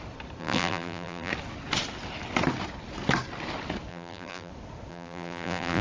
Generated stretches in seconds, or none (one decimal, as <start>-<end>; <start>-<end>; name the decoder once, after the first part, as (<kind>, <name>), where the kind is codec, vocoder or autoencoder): 0.4-1.3 (vocoder, BigVGAN v2); 3.9-4.5; 4.9-5.8